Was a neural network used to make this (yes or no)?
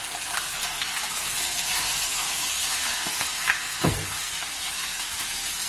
yes